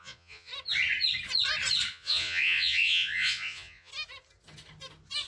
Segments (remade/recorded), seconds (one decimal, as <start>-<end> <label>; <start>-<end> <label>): 0.0-0.5 remade; 0.5-1.9 recorded; 1.9-3.9 remade; 3.9-5.3 recorded